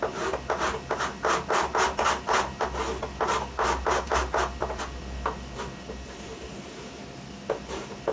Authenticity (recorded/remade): recorded